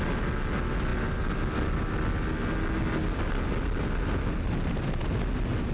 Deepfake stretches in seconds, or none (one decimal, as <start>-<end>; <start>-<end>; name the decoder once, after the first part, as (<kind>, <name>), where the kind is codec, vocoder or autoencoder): none